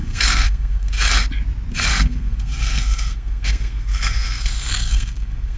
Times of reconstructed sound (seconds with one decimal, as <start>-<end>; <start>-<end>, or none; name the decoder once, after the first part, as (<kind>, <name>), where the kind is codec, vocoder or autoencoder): 0.0-0.9 (codec, SNAC); 1.9-5.6